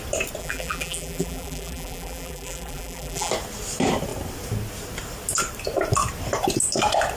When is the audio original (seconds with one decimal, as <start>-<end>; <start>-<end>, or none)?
0.0-0.4; 3.3-7.2